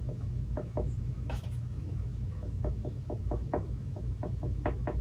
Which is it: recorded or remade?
remade